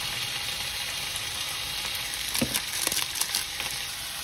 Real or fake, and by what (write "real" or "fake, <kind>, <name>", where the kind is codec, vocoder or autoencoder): real